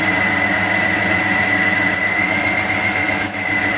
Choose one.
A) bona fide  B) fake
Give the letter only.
A